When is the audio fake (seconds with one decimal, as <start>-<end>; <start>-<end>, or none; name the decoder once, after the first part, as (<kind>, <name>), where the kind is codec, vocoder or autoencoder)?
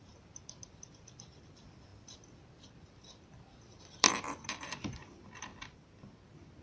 0.0-5.5 (vocoder, BigVGAN v2)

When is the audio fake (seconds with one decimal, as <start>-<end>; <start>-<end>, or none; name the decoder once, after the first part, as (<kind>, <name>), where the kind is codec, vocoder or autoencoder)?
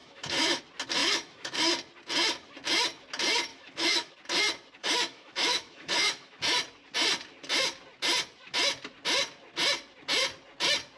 0.0-0.6 (autoencoder, DAC-VAE); 1.0-1.6; 3.5-4.1; 4.8-6.4